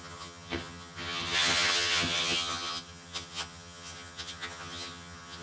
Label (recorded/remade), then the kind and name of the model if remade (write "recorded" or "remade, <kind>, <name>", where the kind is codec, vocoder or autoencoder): remade, vocoder, HiFi-GAN